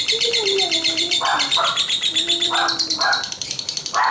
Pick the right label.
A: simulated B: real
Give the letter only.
A